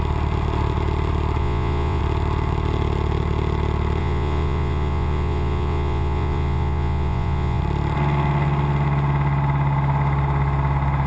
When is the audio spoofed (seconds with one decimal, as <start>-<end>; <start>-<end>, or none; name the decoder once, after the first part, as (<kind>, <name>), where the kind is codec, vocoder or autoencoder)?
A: 1.4-2.0 (vocoder, Vocos); 4.0-7.6